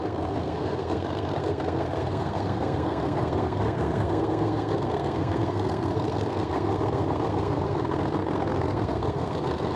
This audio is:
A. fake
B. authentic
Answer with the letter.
A